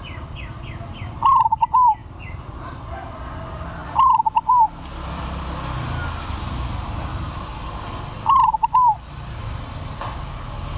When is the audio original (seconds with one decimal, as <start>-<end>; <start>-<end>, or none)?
0.0-2.0; 2.6-10.8